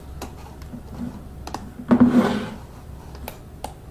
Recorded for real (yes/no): yes